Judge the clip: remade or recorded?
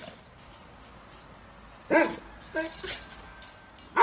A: recorded